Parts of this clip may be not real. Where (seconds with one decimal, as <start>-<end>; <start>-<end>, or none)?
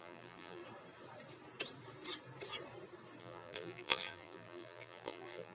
0.0-0.6; 3.2-5.5